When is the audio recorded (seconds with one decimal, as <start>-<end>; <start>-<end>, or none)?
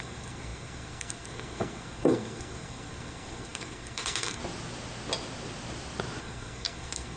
4.4-6.2